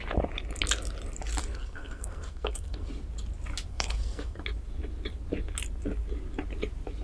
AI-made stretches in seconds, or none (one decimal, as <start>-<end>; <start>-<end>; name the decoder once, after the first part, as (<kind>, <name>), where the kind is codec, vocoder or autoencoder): 1.4-2.9 (codec, SNAC); 3.7-4.4